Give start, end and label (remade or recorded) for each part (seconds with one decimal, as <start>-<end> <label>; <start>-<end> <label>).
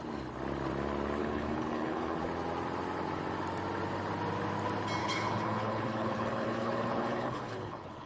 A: 0.0-1.2 recorded; 1.2-2.2 remade; 2.2-5.0 recorded; 5.0-8.1 remade